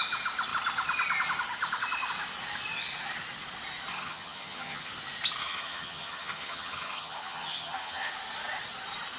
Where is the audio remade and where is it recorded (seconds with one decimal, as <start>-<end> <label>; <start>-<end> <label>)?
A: 0.0-3.9 recorded; 3.9-4.9 remade; 4.9-5.4 recorded; 5.4-8.1 remade; 8.1-9.2 recorded